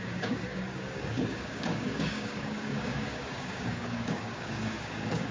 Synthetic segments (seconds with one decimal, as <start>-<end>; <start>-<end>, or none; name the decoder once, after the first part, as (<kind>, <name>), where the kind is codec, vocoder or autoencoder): 0.0-5.3 (codec, DAC)